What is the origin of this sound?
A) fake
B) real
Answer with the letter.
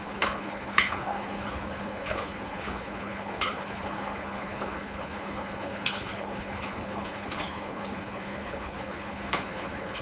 A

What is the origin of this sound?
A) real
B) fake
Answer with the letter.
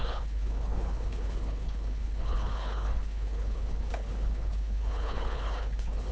B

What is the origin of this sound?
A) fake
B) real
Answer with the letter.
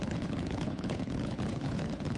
A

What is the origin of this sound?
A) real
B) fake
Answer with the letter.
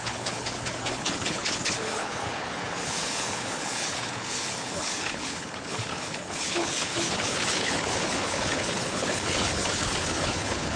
B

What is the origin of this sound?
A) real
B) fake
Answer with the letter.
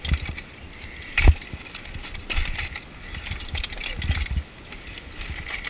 A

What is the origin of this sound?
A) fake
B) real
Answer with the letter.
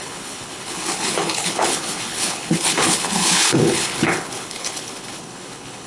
A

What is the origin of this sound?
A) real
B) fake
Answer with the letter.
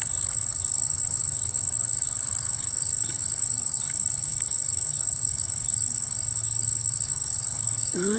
B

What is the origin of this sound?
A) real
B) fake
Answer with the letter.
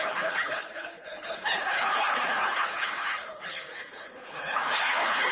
B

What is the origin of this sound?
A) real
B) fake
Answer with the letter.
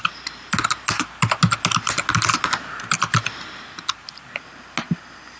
A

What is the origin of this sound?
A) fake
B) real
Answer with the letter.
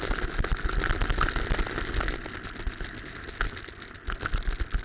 B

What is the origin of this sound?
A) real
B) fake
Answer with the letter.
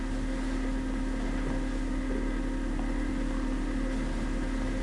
A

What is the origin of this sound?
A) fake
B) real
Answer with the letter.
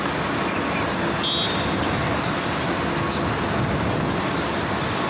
B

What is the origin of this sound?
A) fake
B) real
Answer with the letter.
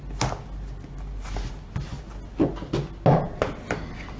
B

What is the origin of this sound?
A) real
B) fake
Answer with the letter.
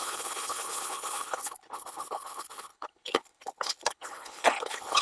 B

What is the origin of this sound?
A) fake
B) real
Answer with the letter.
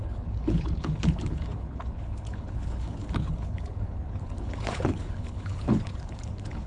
A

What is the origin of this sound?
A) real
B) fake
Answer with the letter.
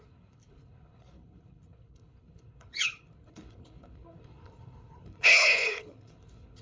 B